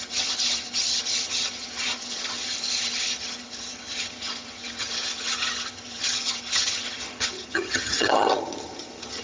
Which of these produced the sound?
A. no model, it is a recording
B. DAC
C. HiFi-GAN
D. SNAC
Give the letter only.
C